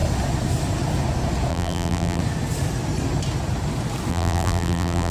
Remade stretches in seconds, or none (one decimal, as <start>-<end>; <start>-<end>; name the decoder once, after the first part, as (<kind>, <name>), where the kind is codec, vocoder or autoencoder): 1.5-2.2 (vocoder, BigVGAN v2); 4.1-5.1